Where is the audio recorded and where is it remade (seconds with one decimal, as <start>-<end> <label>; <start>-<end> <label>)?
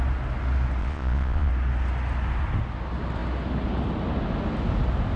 0.0-0.8 recorded; 0.8-1.5 remade; 1.5-5.2 recorded